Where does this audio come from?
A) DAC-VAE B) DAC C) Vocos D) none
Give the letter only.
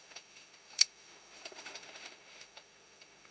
A